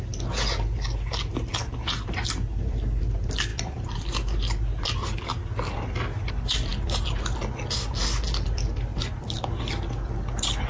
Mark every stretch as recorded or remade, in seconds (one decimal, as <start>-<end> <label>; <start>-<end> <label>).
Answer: 0.0-10.7 recorded